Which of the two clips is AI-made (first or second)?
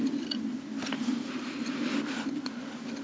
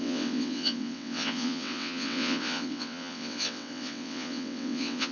second